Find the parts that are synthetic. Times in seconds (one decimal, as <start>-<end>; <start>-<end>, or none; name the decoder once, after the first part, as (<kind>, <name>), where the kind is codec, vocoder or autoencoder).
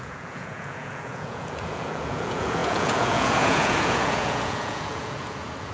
0.0-5.7 (vocoder, Vocos)